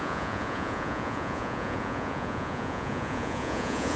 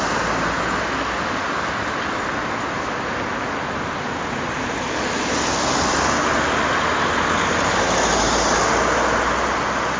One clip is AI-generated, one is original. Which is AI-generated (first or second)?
first